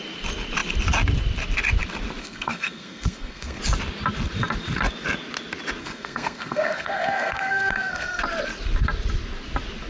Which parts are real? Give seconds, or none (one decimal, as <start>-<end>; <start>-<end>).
0.0-2.2; 3.6-5.8; 8.2-9.9